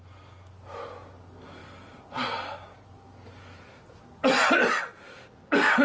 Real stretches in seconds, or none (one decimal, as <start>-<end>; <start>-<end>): 0.0-5.8